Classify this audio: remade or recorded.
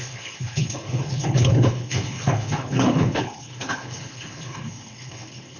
remade